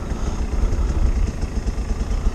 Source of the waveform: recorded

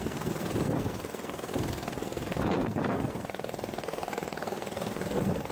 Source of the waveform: remade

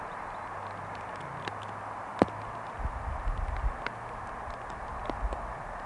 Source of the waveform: recorded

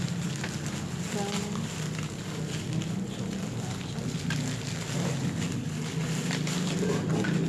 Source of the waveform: recorded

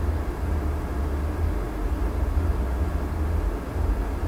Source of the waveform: recorded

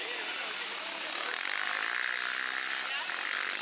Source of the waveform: recorded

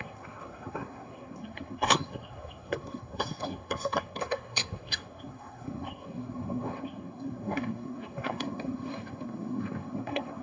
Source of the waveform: remade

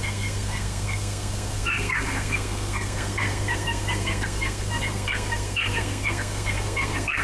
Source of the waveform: remade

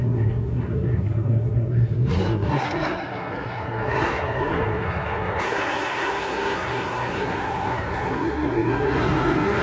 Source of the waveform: remade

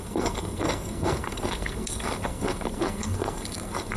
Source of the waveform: remade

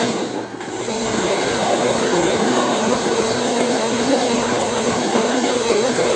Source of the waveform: remade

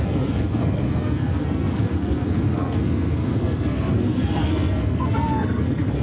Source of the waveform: remade